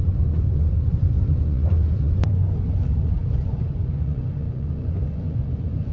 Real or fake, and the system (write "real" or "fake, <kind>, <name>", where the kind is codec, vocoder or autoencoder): fake, vocoder, Vocos